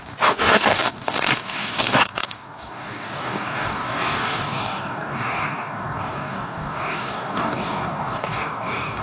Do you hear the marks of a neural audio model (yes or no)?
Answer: yes